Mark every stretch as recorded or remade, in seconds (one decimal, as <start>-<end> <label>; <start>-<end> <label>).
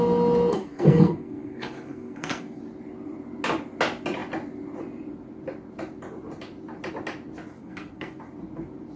0.0-0.5 recorded; 0.5-2.6 remade; 2.6-7.6 recorded; 7.6-8.2 remade; 8.2-9.0 recorded